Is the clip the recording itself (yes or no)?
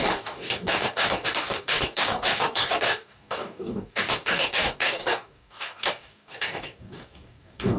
no